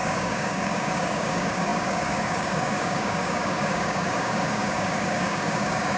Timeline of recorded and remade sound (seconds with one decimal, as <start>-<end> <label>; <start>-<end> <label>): 0.0-6.0 remade